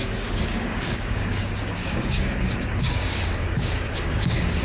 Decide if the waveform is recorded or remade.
remade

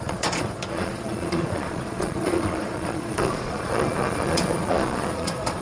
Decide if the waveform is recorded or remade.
remade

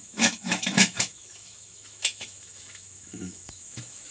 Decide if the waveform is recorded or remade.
remade